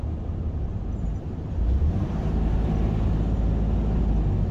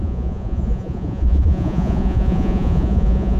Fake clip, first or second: second